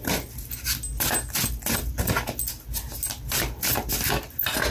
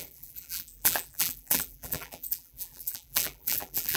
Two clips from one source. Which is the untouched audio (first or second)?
first